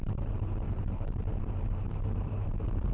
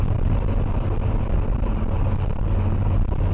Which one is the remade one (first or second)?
first